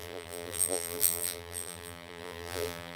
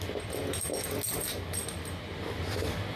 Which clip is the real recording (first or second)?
second